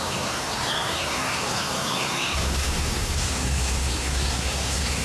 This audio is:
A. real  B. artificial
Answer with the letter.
B